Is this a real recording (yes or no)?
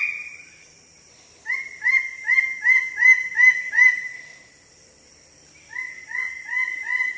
no